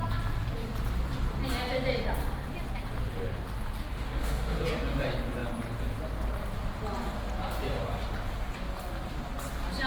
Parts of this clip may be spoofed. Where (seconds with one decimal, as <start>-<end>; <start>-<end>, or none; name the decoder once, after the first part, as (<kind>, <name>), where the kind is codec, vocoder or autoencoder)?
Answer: 3.9-4.6 (autoencoder, DAC-VAE)